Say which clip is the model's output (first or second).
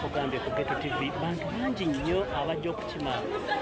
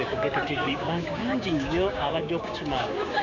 second